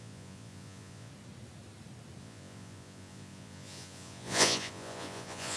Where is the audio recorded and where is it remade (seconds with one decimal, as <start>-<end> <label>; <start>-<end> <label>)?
0.0-1.1 remade; 1.1-2.2 recorded; 2.2-5.6 remade